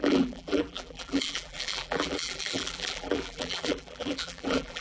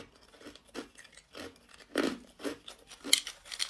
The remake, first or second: first